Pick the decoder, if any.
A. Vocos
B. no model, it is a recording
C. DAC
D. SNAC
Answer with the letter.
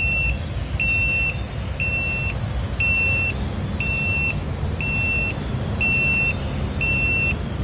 B